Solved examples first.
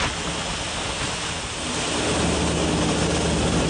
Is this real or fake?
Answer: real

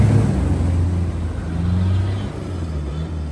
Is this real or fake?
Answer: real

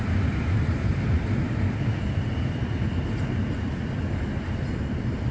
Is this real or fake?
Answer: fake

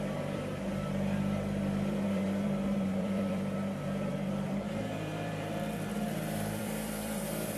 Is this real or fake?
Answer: fake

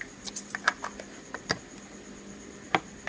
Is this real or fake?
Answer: real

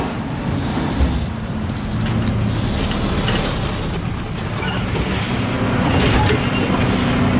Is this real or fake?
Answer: real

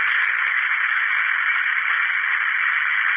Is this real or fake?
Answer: real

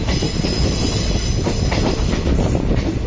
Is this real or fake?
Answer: real